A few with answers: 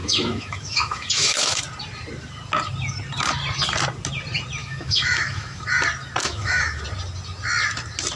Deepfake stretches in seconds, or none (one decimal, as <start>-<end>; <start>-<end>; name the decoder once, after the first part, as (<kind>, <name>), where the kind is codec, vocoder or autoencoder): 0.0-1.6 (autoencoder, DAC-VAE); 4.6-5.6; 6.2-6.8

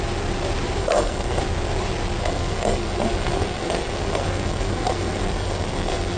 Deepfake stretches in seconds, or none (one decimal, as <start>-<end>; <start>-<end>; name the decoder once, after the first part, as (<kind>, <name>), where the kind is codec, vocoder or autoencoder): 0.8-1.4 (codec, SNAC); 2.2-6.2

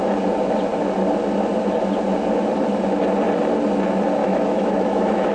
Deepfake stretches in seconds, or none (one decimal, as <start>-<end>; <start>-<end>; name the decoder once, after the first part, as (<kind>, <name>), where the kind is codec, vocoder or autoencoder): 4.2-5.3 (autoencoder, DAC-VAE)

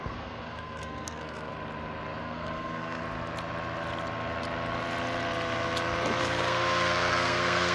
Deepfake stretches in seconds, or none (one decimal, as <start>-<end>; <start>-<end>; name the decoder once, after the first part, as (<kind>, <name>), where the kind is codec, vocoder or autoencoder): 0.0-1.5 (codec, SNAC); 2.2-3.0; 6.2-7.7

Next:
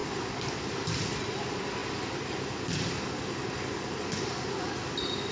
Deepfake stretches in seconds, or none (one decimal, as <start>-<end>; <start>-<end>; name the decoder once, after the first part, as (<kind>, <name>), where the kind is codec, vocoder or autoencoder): none

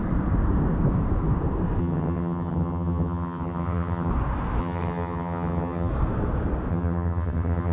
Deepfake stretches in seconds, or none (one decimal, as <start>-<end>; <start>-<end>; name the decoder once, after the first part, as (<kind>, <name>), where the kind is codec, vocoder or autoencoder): 1.8-4.1 (vocoder, HiFi-GAN); 4.6-5.9; 6.7-7.7

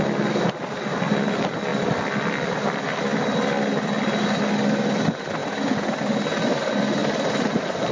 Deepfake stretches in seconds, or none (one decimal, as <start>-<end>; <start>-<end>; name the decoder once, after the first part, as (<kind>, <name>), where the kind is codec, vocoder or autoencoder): none